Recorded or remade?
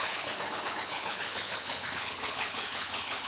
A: remade